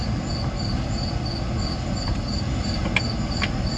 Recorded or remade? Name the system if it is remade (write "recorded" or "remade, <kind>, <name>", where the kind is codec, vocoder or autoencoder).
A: recorded